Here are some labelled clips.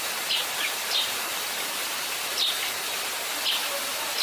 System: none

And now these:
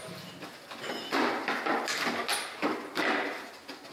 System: none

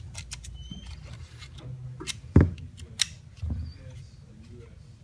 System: none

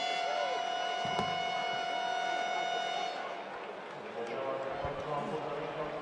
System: none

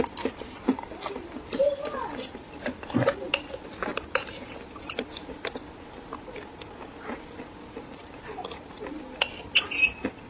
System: none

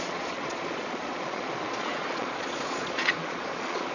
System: vocoder, Vocos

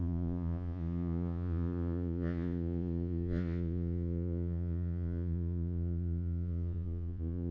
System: vocoder, Vocos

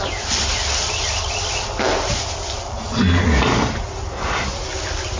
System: none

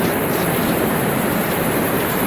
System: vocoder, BigVGAN v2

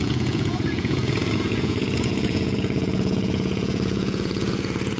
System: vocoder, Vocos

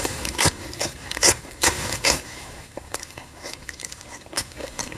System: codec, SNAC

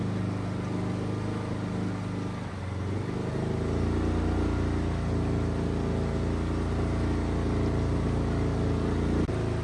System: none